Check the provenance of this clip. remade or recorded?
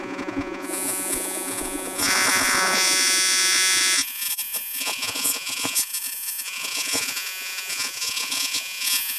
remade